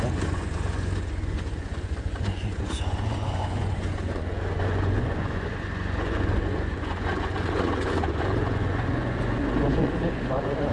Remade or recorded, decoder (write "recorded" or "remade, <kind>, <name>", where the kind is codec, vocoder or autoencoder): remade, vocoder, Vocos